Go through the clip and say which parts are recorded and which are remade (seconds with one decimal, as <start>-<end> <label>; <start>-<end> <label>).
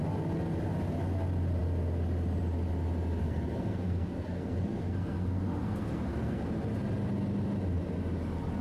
0.0-3.2 recorded; 3.2-6.5 remade; 6.5-8.6 recorded